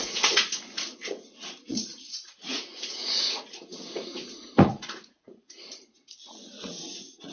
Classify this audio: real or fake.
fake